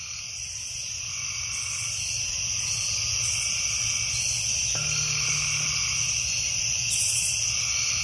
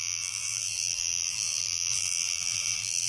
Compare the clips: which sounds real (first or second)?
first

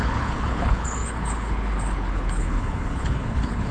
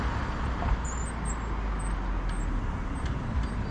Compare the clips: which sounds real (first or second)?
second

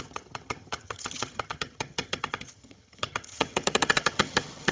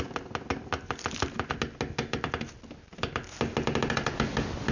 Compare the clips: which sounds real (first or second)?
second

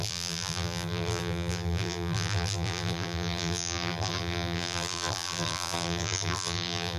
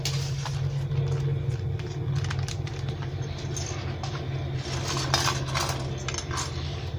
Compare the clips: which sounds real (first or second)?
second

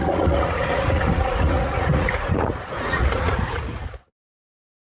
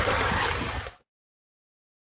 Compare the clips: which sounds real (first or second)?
second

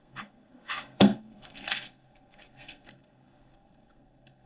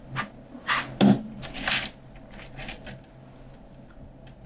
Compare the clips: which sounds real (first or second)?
second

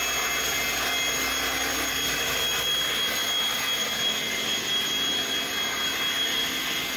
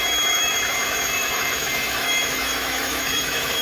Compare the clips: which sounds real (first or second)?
first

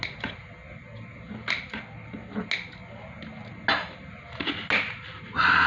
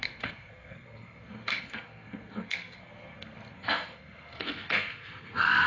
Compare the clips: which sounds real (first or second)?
first